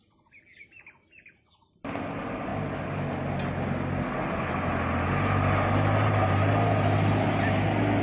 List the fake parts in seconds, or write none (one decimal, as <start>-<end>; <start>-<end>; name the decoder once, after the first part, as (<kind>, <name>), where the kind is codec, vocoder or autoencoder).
none